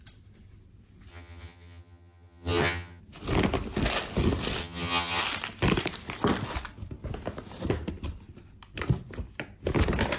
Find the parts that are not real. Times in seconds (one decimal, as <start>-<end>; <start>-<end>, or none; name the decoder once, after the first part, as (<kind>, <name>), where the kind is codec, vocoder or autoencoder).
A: 1.1-3.0 (vocoder, HiFi-GAN); 4.6-5.2